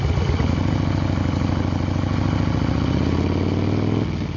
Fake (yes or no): no